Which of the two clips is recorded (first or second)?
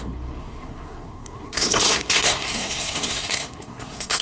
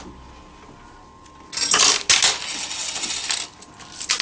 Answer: second